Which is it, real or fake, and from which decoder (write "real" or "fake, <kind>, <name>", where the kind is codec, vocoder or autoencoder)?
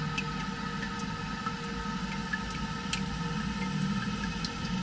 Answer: real